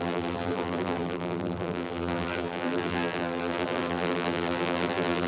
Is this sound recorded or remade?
remade